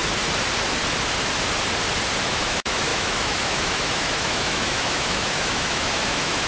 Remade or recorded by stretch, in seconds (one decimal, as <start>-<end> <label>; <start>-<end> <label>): 0.0-2.2 recorded; 2.2-6.5 remade